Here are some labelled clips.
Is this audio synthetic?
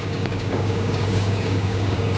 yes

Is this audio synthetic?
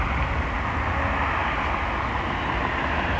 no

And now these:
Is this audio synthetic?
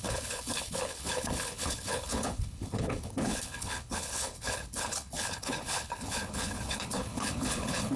yes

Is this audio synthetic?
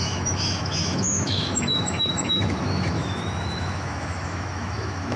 yes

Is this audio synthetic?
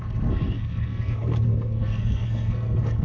yes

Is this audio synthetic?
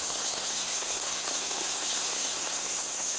yes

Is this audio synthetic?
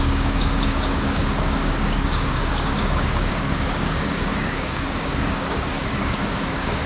yes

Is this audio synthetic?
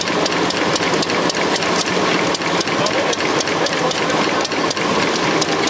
no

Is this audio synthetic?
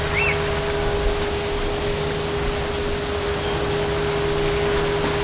no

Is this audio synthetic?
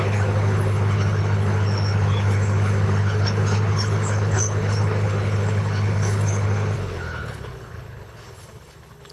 yes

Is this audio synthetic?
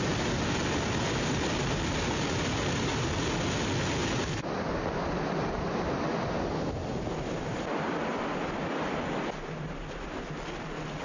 no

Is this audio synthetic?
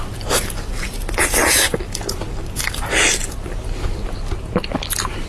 no